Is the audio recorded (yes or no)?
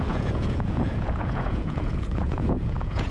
no